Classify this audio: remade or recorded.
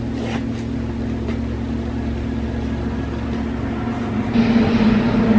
recorded